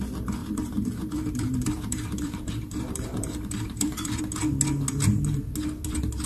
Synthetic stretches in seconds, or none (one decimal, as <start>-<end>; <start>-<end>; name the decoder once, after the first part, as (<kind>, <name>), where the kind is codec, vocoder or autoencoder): 0.4-4.2 (vocoder, BigVGAN v2)